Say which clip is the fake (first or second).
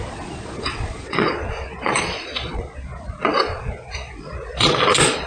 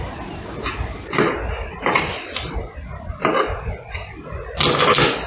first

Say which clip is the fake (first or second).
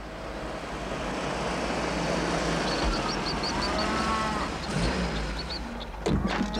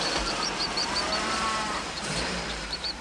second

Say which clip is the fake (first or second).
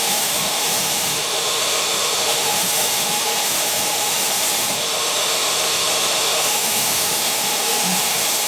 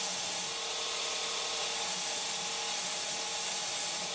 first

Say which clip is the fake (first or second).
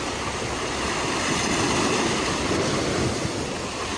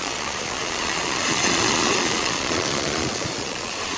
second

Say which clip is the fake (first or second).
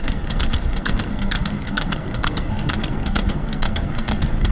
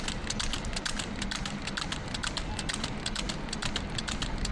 first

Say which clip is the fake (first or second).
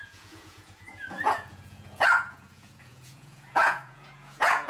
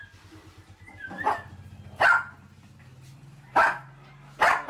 first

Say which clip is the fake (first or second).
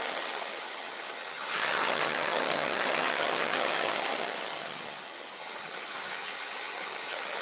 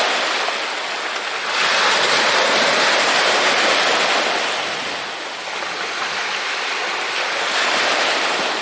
first